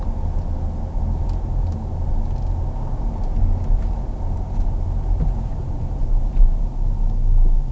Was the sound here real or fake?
real